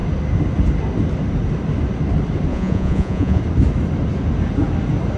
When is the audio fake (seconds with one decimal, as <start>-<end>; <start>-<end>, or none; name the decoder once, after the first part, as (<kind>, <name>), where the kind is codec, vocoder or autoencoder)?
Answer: 2.5-3.4 (vocoder, Vocos)